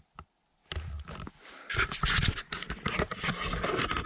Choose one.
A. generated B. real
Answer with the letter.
B